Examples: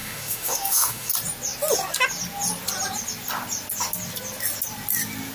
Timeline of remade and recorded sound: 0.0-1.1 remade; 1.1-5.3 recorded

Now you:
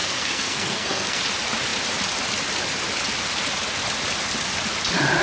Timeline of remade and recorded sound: 0.0-1.2 remade; 1.2-5.2 recorded

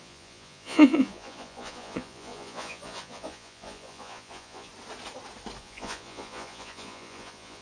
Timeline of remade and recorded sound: 0.0-4.7 remade; 4.7-5.6 recorded; 5.6-7.6 remade